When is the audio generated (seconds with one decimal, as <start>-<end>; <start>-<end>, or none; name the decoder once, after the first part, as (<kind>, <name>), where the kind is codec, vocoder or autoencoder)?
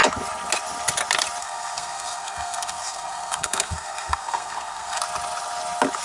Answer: 1.4-5.0 (codec, SNAC)